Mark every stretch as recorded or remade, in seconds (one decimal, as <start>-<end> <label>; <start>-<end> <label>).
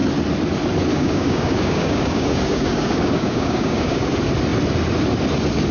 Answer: 0.0-0.9 recorded; 0.9-4.1 remade; 4.1-5.7 recorded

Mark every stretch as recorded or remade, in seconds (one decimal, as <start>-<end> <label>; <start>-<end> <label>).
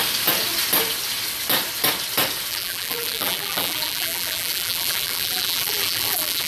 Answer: 0.0-2.5 recorded; 2.5-6.5 remade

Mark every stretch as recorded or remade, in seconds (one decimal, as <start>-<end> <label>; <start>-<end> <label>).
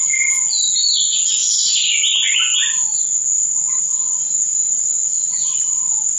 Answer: 0.0-5.4 recorded; 5.4-6.2 remade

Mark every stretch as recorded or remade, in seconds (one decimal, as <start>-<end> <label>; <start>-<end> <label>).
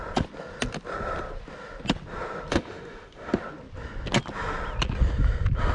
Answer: 0.0-2.5 recorded; 2.5-3.4 remade; 3.4-5.7 recorded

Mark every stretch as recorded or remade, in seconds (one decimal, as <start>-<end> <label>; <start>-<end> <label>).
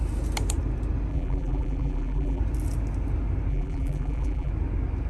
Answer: 0.0-1.1 recorded; 1.1-2.4 remade; 2.4-3.5 recorded; 3.5-4.5 remade; 4.5-5.1 recorded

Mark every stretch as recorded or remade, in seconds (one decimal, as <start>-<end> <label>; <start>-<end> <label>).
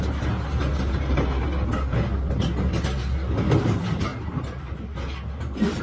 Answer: 0.0-1.5 remade; 1.5-3.6 recorded; 3.6-5.8 remade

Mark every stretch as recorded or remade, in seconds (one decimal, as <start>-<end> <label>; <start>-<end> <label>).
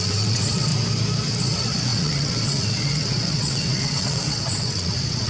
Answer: 0.0-0.7 remade; 0.7-1.4 recorded; 1.4-5.3 remade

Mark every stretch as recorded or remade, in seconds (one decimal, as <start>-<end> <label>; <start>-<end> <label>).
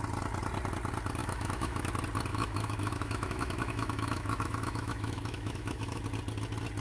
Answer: 0.0-1.2 recorded; 1.2-1.9 remade; 1.9-2.3 recorded; 2.3-6.0 remade; 6.0-6.8 recorded